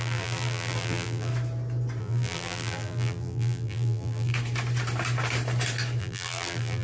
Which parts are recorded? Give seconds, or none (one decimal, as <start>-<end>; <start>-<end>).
1.3-2.0; 4.3-6.0